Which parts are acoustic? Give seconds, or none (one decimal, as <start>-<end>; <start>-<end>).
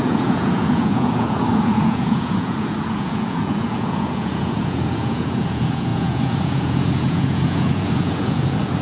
none